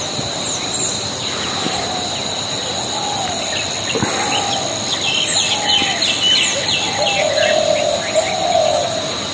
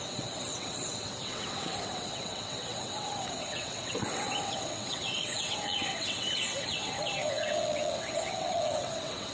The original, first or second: first